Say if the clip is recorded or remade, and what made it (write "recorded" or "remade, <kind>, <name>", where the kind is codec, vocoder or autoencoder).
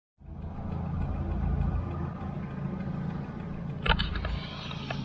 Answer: recorded